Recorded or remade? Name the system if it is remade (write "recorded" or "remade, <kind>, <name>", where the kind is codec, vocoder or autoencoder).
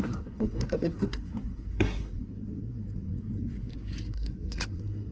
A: remade, codec, SNAC